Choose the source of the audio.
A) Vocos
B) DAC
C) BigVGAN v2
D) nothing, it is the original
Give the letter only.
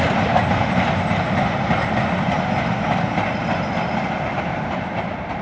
D